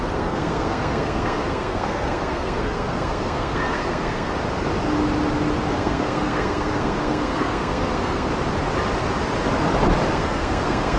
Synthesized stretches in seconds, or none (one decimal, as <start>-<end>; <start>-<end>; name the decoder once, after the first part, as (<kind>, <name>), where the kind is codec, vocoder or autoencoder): 0.0-4.3 (codec, SNAC); 5.7-8.3; 10.1-11.0